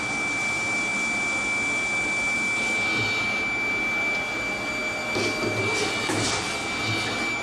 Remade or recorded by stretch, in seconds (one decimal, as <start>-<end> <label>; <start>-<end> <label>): 0.0-7.4 recorded